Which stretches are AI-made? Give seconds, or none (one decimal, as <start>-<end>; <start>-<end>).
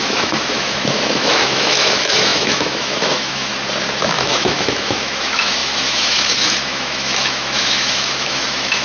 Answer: 0.0-3.5; 4.0-8.8